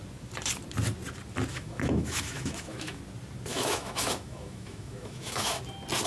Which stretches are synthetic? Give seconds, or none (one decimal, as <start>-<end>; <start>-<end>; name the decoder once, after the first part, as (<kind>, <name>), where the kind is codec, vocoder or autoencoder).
1.5-3.0 (autoencoder, DAC-VAE); 3.5-5.6